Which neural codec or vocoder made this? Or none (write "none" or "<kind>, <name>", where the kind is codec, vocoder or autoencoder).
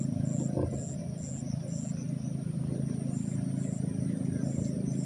none